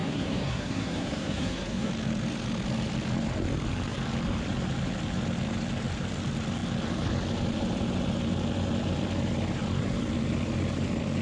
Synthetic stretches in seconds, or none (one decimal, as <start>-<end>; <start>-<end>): 0.0-1.9